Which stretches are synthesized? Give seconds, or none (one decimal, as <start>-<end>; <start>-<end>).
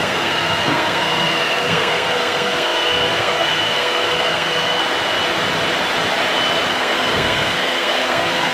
0.0-4.8; 6.7-8.5